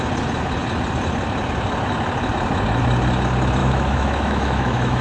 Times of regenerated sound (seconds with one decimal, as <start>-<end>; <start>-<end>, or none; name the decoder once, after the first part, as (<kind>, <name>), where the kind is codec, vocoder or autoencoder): 3.6-5.0 (autoencoder, DAC-VAE)